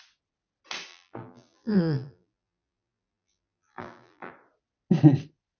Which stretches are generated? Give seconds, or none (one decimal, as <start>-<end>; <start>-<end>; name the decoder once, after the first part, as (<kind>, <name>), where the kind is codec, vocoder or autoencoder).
0.9-4.3 (vocoder, BigVGAN v2)

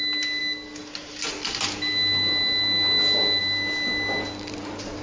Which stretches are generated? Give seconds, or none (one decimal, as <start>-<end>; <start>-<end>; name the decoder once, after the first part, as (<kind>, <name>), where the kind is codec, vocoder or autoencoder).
none

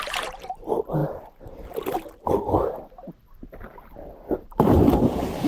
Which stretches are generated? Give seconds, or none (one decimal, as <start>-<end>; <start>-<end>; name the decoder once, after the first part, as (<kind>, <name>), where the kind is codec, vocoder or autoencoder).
0.0-1.0 (vocoder, BigVGAN v2); 4.3-5.5

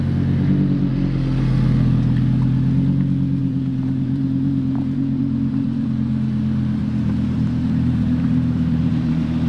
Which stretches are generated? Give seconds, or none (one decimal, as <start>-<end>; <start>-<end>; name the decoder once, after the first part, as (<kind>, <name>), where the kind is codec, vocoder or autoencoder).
3.4-6.1 (vocoder, BigVGAN v2); 6.8-9.5

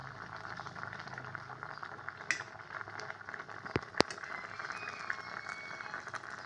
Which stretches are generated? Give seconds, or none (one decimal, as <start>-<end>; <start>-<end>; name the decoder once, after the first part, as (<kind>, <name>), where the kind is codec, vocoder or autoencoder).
0.0-2.0 (vocoder, BigVGAN v2)

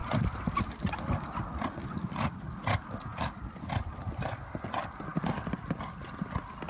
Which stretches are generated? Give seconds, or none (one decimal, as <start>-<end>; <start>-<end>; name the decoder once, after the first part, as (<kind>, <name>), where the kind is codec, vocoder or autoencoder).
0.0-0.9 (vocoder, BigVGAN v2); 3.1-4.4

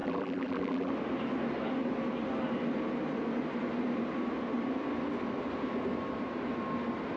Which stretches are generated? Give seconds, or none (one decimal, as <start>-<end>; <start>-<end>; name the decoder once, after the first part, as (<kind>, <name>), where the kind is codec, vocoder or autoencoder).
0.0-0.9 (vocoder, BigVGAN v2)

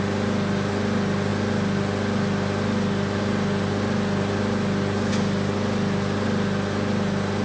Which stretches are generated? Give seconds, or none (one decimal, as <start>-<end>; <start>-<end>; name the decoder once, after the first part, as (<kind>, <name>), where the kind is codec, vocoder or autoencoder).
none